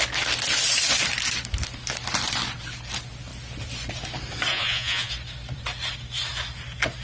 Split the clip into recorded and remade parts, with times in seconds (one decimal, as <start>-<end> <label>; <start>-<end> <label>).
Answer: 0.0-4.5 recorded; 4.5-5.1 remade; 5.1-7.0 recorded

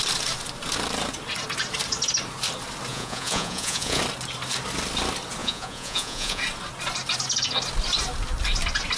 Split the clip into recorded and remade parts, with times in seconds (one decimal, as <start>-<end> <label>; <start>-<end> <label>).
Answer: 0.0-2.9 recorded; 2.9-4.0 remade; 4.0-5.4 recorded; 5.4-6.4 remade; 6.4-9.0 recorded

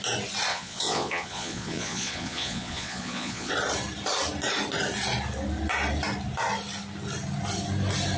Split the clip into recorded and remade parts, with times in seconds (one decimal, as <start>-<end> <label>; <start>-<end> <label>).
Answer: 0.0-0.5 recorded; 0.5-3.5 remade; 3.5-8.2 recorded

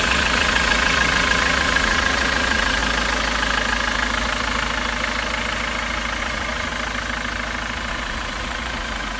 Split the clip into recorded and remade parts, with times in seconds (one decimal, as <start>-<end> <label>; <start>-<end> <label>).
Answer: 0.0-2.8 remade; 2.8-6.2 recorded; 6.2-6.7 remade; 6.7-7.9 recorded; 7.9-9.2 remade

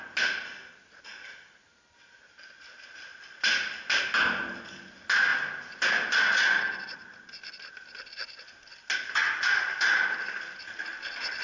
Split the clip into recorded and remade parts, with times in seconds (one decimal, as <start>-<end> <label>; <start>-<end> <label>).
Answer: 0.0-11.4 recorded

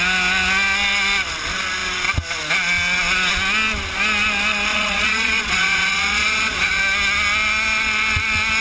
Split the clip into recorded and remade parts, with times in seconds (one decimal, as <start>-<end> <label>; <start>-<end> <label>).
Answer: 0.0-4.7 recorded; 4.7-6.8 remade; 6.8-8.6 recorded

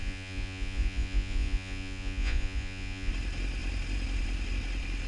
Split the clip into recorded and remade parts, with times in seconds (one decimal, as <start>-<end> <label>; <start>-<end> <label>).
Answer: 0.0-3.1 remade; 3.1-5.1 recorded